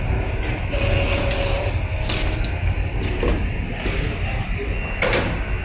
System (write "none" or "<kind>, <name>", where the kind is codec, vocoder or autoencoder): none